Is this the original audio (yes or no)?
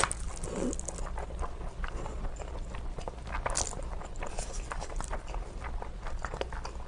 yes